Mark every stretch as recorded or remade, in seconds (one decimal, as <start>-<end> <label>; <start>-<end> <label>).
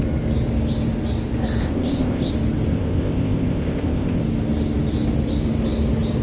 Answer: 0.0-1.6 recorded; 1.6-2.3 remade; 2.3-2.7 recorded; 2.7-4.2 remade; 4.2-6.2 recorded